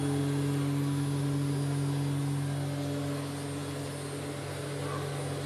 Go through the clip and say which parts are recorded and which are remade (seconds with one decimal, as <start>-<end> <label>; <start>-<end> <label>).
0.0-5.5 recorded